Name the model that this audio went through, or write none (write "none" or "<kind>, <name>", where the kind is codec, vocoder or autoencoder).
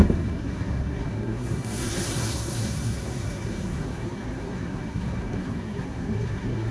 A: codec, SNAC